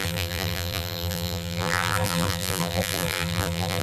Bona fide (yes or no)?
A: no